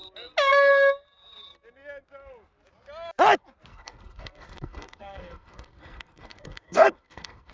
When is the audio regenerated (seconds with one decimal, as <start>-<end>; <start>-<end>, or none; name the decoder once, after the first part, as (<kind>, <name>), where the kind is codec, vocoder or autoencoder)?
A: 3.7-7.5 (codec, SNAC)